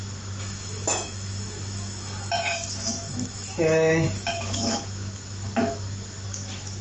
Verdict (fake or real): fake